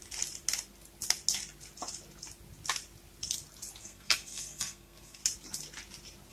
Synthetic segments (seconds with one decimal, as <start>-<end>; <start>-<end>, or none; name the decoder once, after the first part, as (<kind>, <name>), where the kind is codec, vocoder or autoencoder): 3.8-5.2 (codec, SNAC)